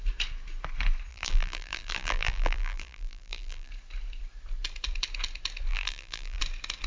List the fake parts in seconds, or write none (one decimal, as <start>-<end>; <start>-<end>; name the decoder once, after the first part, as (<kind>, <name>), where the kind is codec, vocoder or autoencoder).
1.1-3.7 (vocoder, BigVGAN v2); 5.7-6.4